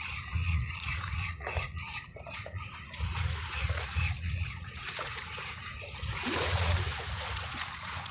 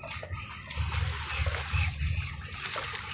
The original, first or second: second